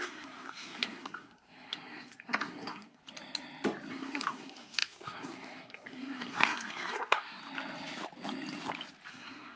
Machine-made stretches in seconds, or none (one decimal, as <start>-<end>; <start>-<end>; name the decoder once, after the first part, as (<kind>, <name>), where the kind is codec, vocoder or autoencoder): 0.0-3.0 (codec, SNAC); 3.9-7.4; 9.1-9.6